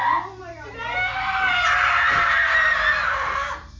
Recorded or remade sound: recorded